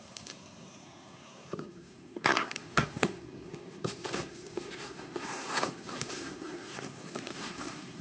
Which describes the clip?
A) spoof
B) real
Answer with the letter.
A